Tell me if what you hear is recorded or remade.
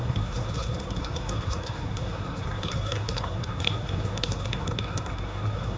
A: remade